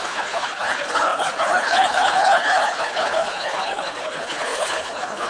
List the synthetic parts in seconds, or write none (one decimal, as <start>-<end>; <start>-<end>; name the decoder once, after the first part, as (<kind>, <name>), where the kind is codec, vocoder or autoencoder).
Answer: 0.0-5.3 (codec, HILCodec)